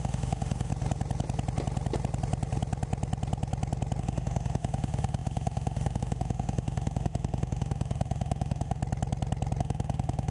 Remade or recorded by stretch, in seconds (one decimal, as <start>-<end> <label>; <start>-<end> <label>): 0.0-0.7 remade; 0.7-4.0 recorded; 4.0-8.8 remade; 8.8-9.6 recorded; 9.6-10.3 remade